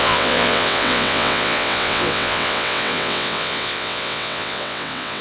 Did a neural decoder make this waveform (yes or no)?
yes